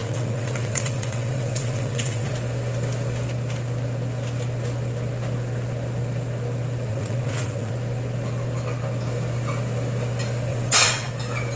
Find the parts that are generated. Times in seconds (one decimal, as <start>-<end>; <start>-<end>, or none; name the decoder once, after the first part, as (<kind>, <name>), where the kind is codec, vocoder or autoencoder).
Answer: 0.0-2.3 (vocoder, WaveNeXt); 6.9-7.7; 10.5-11.1